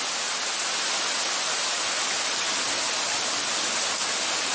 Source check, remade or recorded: recorded